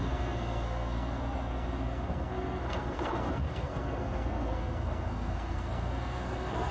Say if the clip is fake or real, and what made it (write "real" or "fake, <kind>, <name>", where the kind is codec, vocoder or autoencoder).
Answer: fake, codec, SNAC